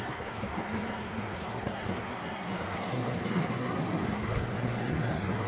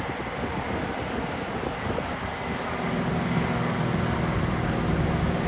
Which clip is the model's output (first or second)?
first